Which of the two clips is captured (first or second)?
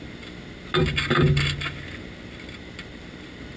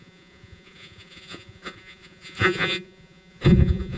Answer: first